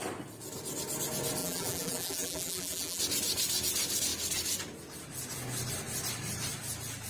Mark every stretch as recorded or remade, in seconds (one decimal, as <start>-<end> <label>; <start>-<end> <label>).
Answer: 0.0-1.4 recorded; 1.4-3.0 remade; 3.0-7.1 recorded